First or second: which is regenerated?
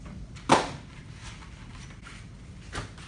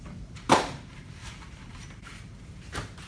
second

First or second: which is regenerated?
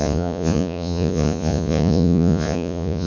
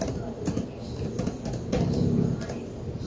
first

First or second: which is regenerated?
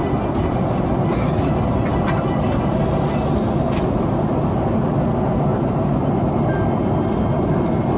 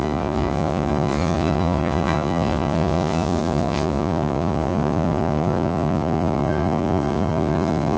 second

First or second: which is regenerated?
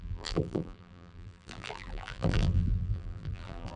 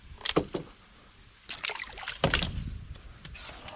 first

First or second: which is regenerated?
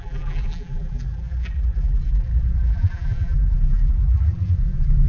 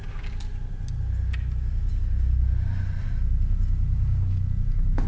first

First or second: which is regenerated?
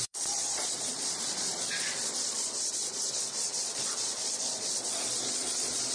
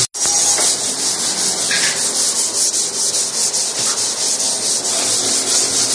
first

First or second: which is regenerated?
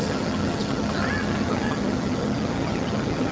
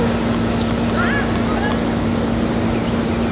first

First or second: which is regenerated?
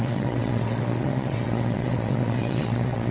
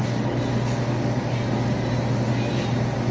first